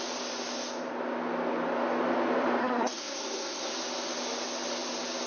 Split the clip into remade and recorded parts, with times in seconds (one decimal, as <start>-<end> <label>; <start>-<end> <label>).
0.0-2.6 recorded; 2.6-3.7 remade; 3.7-5.3 recorded